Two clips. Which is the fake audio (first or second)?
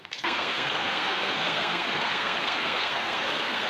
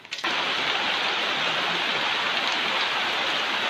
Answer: first